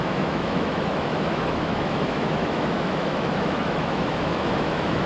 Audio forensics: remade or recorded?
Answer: remade